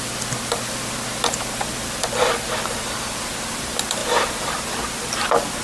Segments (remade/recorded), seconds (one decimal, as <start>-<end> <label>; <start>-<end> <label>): 0.0-5.6 recorded